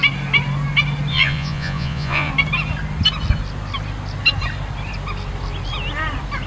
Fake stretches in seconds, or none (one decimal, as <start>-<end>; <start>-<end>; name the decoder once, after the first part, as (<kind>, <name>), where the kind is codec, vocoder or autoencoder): 1.1-2.3 (vocoder, Vocos)